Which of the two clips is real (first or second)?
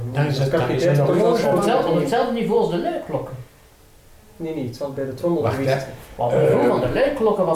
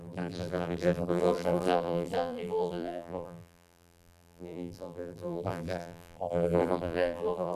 first